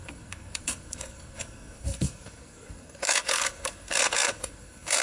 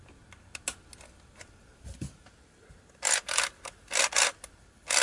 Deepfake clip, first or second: first